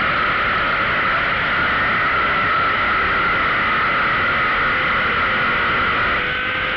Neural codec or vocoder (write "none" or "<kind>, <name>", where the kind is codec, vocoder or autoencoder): none